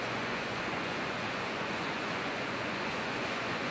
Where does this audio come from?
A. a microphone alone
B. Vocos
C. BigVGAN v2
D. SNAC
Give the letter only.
B